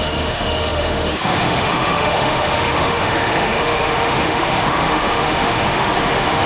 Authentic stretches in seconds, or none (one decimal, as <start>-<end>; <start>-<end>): none